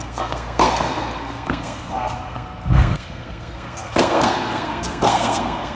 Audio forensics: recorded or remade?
remade